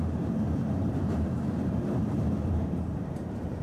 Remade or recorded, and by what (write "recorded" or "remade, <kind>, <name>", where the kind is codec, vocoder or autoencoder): remade, vocoder, BigVGAN v2